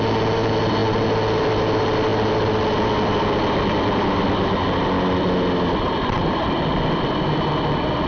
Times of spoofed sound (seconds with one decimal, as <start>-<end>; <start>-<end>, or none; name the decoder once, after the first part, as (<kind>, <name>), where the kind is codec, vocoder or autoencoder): none